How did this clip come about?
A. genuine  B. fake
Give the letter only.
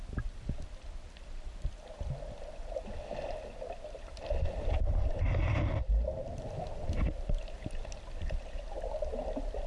A